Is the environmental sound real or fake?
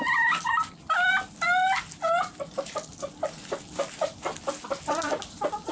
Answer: real